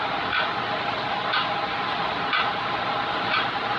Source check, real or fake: real